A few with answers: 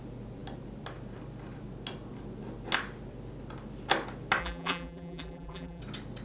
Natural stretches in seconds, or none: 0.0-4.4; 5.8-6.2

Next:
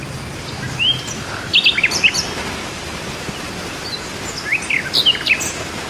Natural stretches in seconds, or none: 0.0-1.5; 2.3-5.9